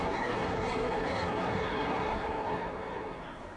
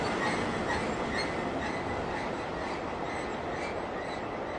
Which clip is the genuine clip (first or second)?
second